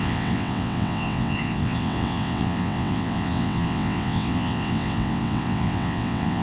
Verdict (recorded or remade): remade